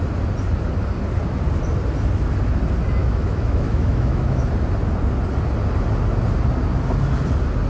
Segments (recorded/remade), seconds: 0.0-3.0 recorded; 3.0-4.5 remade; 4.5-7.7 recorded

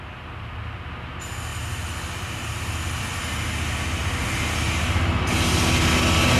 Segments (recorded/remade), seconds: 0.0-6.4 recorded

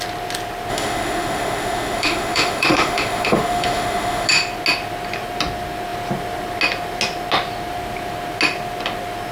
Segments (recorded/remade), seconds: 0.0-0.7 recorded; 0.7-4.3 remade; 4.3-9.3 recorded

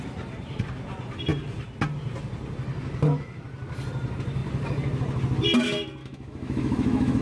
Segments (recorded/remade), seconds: 0.0-6.0 recorded; 6.0-7.2 remade

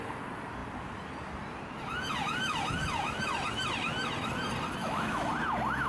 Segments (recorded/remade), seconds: 0.0-4.8 recorded; 4.8-5.3 remade; 5.3-5.9 recorded

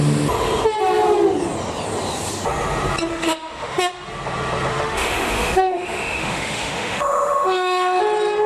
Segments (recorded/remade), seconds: 0.0-3.1 recorded; 3.1-3.9 remade; 3.9-4.7 recorded; 4.7-8.0 remade; 8.0-8.5 recorded

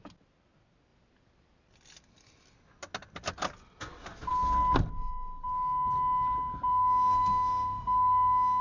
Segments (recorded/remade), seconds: 0.0-6.7 recorded; 6.7-8.6 remade

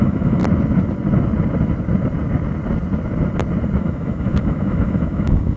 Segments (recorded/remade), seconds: 0.0-0.4 remade; 0.4-3.8 recorded; 3.8-5.6 remade